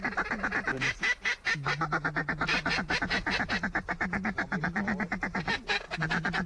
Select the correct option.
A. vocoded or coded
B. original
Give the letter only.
B